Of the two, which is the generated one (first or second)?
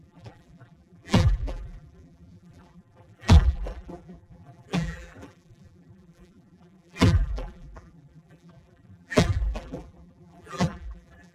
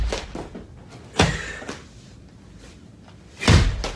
first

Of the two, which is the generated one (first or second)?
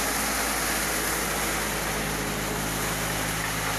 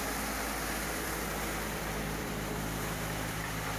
second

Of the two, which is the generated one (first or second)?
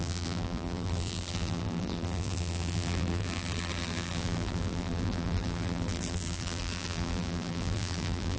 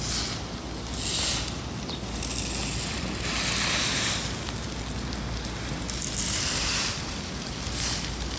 first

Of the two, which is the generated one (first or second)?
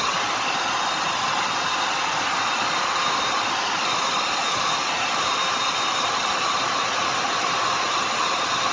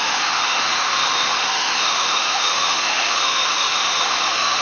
second